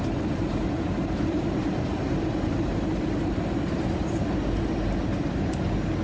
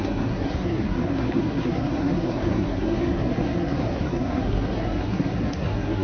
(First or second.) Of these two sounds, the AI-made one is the second